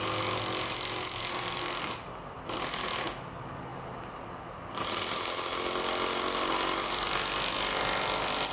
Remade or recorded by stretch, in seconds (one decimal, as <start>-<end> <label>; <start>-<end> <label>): 0.0-1.3 recorded; 1.3-1.9 remade; 1.9-8.5 recorded